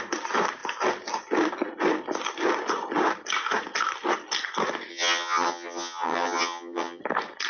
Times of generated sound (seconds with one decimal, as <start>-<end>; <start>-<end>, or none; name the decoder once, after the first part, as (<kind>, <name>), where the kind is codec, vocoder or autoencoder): 4.9-7.0 (vocoder, HiFi-GAN)